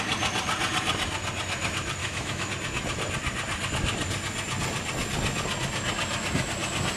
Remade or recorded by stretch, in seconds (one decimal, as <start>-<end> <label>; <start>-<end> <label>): 0.0-2.0 recorded; 2.0-2.5 remade; 2.5-7.0 recorded